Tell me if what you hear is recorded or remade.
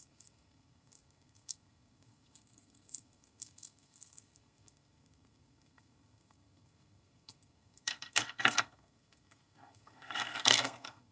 remade